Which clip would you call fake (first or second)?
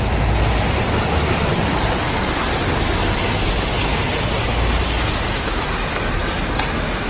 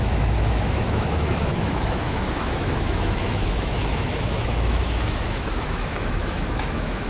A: second